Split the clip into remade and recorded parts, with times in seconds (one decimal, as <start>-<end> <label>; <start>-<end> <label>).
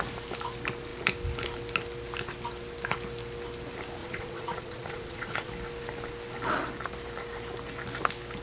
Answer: 0.0-4.0 recorded; 4.0-5.5 remade; 5.5-8.4 recorded